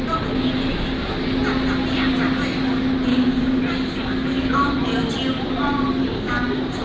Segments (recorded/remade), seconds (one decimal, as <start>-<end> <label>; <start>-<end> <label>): 0.0-3.1 recorded; 3.1-3.6 remade; 3.6-6.0 recorded; 6.0-6.8 remade